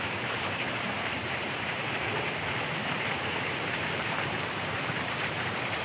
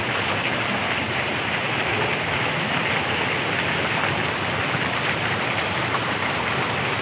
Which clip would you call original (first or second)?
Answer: second